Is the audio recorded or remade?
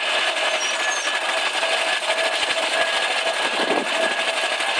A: recorded